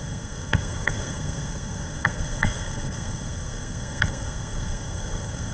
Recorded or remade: remade